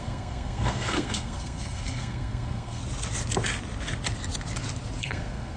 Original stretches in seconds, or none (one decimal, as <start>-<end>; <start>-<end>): 2.8-5.0